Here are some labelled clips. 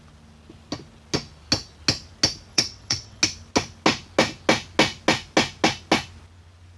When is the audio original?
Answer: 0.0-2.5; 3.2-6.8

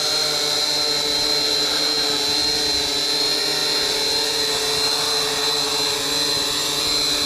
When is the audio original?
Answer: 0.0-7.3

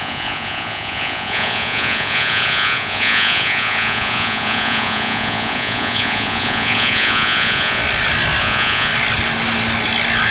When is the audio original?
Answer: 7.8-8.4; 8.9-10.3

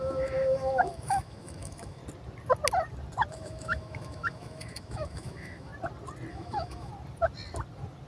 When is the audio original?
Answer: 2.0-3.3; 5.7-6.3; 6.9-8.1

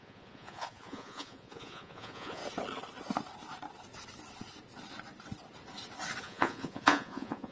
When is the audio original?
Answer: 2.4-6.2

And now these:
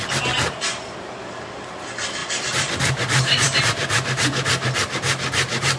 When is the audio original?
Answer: 0.0-2.2; 3.6-5.8